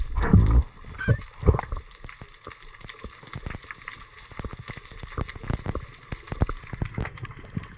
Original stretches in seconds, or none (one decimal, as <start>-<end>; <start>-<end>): 0.0-3.6; 4.8-7.8